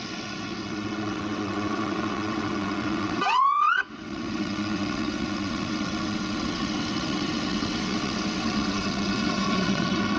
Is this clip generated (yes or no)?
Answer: yes